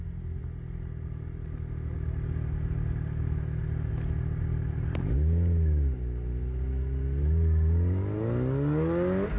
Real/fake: real